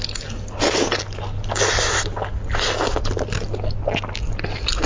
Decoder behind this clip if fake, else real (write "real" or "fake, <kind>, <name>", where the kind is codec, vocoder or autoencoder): real